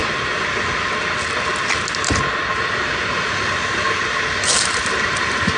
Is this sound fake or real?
real